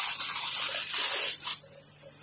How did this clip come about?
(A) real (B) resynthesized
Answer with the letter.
A